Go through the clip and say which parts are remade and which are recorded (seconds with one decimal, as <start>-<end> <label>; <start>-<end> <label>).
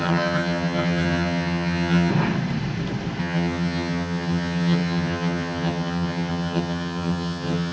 0.0-2.1 remade; 2.1-3.2 recorded; 3.2-7.7 remade